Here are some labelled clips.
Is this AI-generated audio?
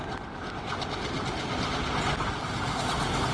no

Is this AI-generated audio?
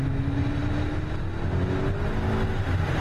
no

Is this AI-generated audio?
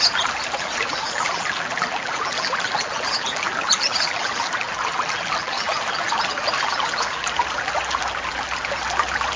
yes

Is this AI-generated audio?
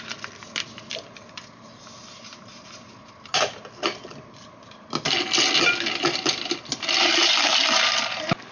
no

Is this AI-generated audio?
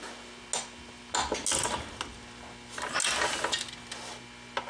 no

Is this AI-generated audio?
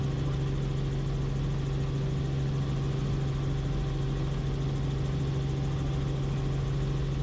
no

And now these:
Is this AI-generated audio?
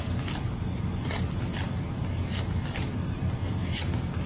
no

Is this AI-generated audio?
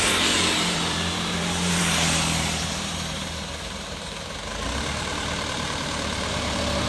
yes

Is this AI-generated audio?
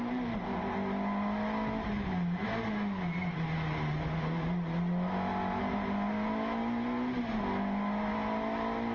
no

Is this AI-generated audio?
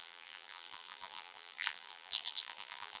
yes